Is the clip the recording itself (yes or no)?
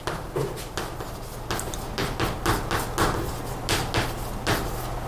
yes